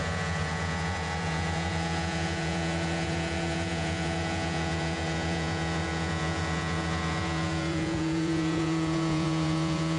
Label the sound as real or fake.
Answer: fake